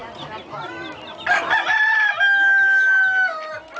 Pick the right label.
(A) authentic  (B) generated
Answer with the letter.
A